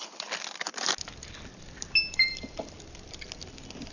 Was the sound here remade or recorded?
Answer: recorded